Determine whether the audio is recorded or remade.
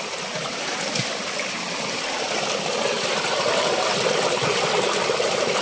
recorded